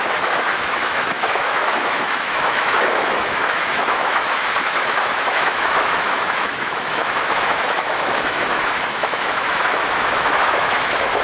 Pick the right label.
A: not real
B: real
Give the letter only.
A